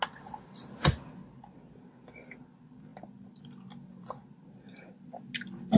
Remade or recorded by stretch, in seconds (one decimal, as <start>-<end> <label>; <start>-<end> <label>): 0.0-5.8 recorded